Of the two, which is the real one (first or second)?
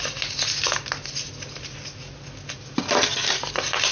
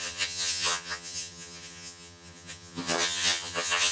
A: first